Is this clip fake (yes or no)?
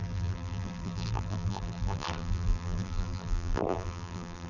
yes